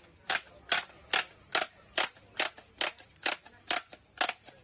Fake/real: real